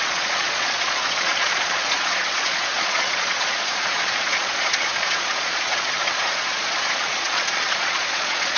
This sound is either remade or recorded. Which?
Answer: remade